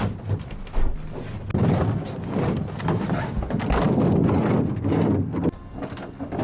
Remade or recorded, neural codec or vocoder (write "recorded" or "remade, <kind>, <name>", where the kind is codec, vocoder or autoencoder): recorded